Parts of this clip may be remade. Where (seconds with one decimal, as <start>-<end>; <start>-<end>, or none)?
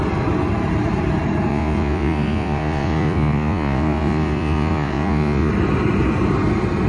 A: 1.5-5.5